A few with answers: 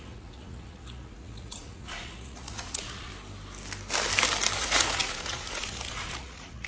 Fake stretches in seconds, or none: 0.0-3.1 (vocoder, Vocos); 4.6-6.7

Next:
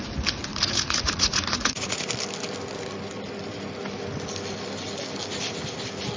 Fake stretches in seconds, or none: 0.5-2.1 (vocoder, Vocos)